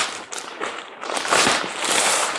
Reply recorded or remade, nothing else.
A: remade